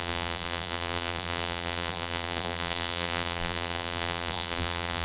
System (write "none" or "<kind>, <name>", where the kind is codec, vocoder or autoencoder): vocoder, BigVGAN v2